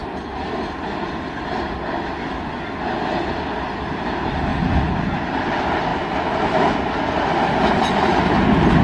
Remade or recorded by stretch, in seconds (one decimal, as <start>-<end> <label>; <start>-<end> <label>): 0.0-8.8 recorded